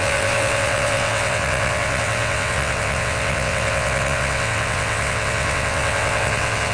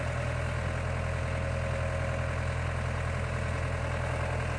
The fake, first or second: first